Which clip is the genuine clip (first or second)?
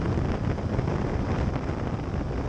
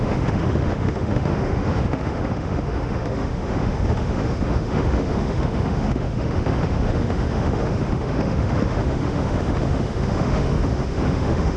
first